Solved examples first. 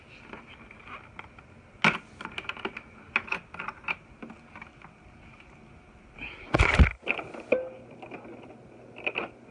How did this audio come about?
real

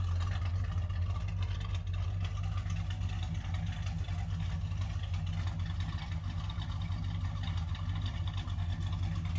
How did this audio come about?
real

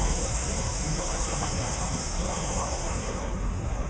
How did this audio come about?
fake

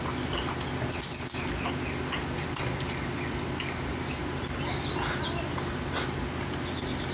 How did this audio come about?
real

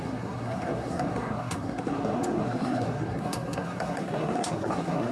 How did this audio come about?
fake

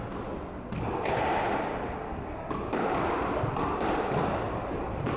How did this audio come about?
real